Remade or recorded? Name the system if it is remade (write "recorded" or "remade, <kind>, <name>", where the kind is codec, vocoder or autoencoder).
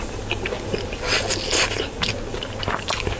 recorded